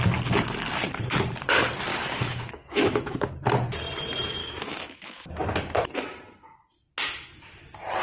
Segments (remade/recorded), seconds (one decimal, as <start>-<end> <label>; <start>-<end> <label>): 0.0-1.9 recorded; 1.9-3.3 remade; 3.3-4.4 recorded; 4.4-5.3 remade; 5.3-8.0 recorded